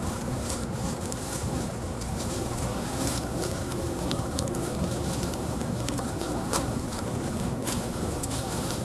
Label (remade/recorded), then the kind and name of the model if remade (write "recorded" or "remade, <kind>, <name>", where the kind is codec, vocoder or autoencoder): remade, codec, SNAC